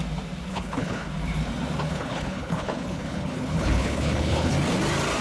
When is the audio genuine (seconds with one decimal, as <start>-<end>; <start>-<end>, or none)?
0.0-0.5; 1.1-1.9; 4.5-5.2